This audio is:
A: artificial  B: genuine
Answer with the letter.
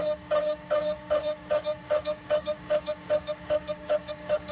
A